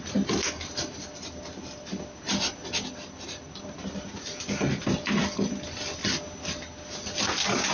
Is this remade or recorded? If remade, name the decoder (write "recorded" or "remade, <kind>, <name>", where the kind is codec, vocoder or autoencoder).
recorded